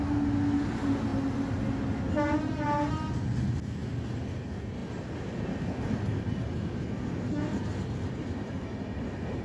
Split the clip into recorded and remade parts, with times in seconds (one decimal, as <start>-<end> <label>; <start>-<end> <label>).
0.0-9.4 recorded